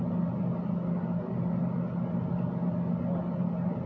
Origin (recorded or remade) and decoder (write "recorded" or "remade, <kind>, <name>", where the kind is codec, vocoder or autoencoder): recorded